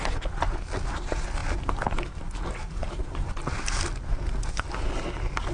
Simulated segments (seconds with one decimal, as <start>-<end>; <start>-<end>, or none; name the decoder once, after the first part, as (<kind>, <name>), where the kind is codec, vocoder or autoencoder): none